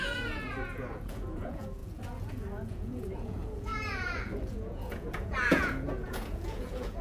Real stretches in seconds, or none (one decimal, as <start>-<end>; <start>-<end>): none